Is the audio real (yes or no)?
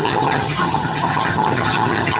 no